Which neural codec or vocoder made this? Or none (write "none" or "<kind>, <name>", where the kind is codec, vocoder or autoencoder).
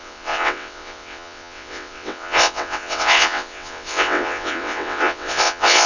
vocoder, WaveNeXt